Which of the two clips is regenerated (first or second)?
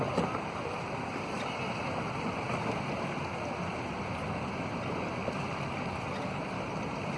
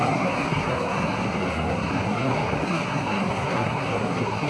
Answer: second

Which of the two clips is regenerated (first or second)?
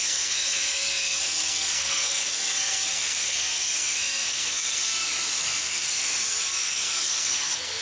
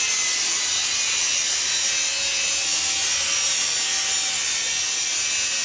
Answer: first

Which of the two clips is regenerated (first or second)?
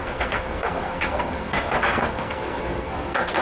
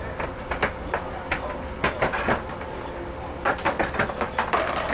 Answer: first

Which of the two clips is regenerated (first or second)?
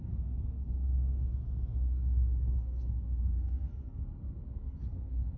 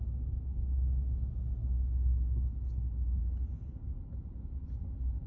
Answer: first